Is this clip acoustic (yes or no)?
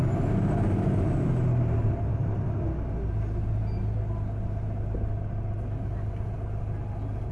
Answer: yes